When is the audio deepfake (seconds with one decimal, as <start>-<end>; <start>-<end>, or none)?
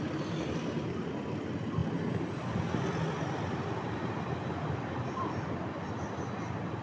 none